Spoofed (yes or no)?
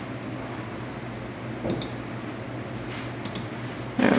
no